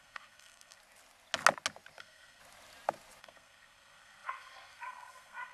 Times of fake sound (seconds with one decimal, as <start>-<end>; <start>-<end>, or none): 0.0-0.8; 2.0-2.4; 3.2-5.5

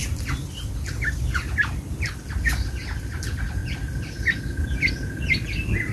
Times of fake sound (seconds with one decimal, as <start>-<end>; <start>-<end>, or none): 0.0-2.8